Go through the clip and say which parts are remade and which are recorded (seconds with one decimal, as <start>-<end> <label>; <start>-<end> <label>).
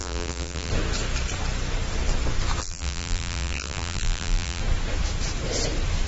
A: 0.0-0.7 remade; 0.7-2.6 recorded; 2.6-4.6 remade; 4.6-6.1 recorded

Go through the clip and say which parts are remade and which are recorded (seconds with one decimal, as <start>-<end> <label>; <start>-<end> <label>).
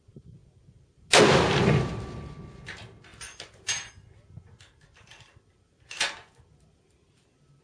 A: 0.0-7.6 recorded